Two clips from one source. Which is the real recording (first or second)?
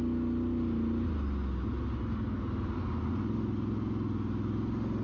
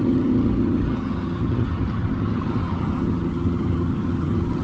first